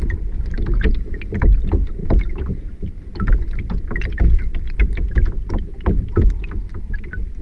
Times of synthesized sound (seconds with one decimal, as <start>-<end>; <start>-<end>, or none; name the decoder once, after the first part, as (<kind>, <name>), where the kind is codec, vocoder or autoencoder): none